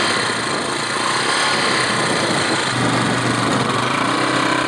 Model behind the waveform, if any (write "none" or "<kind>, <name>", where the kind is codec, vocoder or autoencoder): none